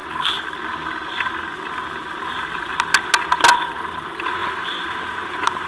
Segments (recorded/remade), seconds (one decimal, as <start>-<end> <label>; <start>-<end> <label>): 0.0-5.7 recorded